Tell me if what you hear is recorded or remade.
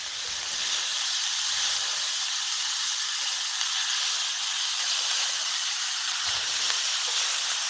recorded